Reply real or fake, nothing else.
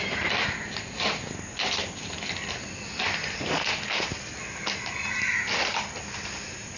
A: real